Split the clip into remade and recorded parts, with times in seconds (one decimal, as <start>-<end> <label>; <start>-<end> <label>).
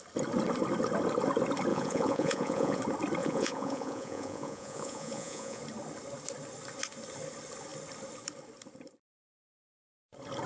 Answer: 0.0-1.7 recorded; 1.7-2.8 remade; 2.8-3.2 recorded; 3.2-5.6 remade; 5.6-10.5 recorded